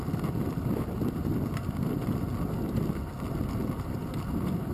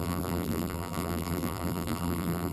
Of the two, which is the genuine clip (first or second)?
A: first